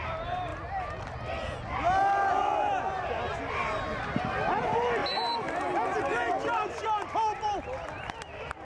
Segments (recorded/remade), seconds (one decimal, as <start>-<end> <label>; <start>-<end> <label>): 0.0-8.6 recorded